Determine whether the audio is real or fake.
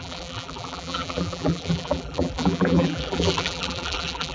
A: fake